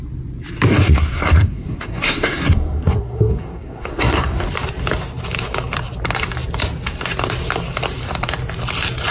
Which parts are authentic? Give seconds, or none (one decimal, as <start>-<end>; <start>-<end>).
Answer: 0.0-0.7; 4.5-9.1

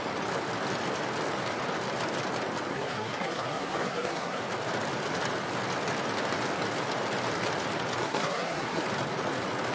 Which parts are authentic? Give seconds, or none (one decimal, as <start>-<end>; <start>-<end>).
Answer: 0.0-2.7; 4.4-8.0; 8.8-9.7